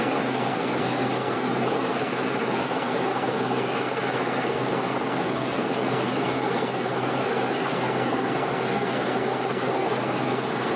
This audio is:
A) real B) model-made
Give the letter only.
B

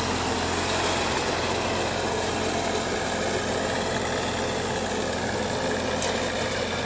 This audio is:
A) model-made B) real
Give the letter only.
B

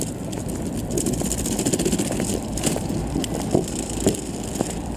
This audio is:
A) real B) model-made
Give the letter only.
B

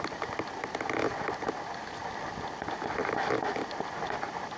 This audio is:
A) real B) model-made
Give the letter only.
A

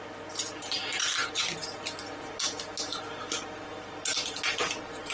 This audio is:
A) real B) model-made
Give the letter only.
A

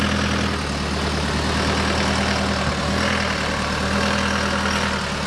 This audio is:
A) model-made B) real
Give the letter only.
B